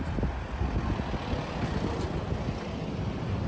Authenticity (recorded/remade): recorded